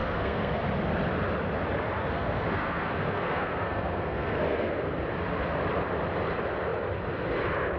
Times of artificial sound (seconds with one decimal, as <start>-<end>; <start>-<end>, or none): 0.0-0.6; 2.0-4.7